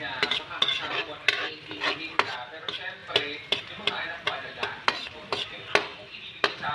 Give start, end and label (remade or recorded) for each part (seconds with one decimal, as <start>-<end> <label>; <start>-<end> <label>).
0.0-6.7 recorded